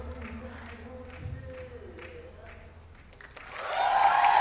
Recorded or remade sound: recorded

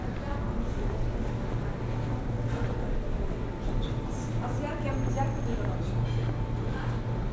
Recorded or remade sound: recorded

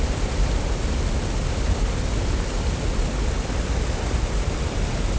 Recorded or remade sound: recorded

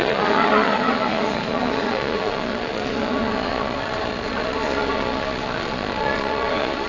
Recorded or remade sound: remade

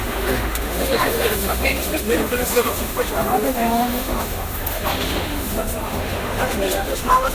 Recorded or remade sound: remade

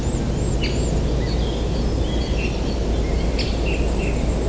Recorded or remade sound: recorded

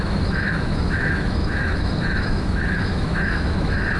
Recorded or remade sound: remade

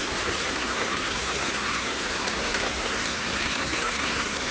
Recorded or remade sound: remade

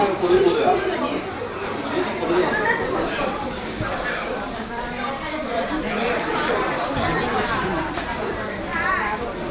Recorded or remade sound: remade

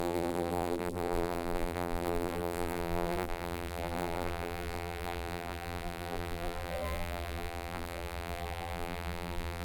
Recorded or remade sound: remade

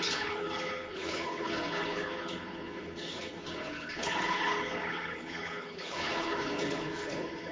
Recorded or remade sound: remade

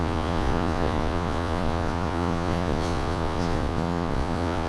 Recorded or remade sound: remade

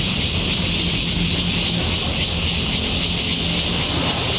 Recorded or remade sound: recorded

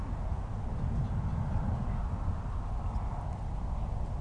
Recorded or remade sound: recorded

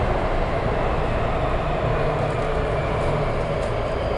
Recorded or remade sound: recorded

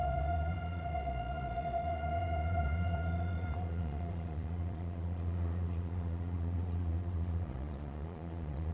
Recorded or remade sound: remade